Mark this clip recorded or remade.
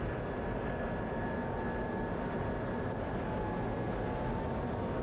recorded